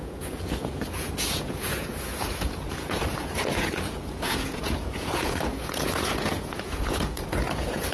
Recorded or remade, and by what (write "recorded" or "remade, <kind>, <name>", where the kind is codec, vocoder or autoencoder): remade, vocoder, Vocos